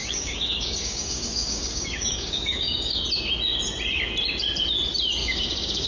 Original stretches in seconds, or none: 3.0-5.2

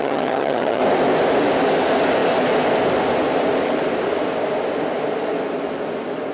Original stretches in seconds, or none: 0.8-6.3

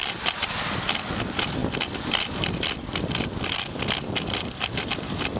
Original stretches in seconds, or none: 0.0-5.4